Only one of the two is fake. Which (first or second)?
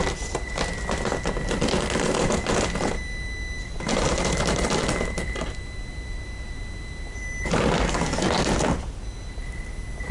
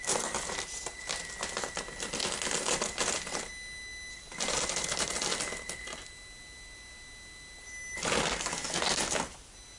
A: first